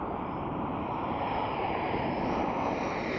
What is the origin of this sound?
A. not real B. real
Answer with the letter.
A